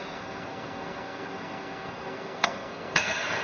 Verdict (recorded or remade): remade